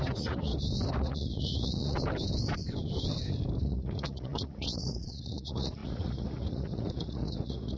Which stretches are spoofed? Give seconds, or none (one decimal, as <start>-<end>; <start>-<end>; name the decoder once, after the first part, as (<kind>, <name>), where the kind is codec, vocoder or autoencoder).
0.0-0.5 (vocoder, Vocos); 1.0-2.0; 3.6-7.8